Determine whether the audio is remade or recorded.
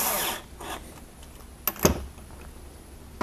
recorded